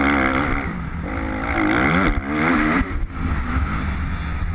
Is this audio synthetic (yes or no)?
no